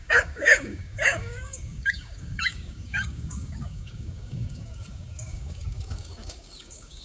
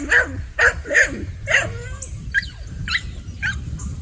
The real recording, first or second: second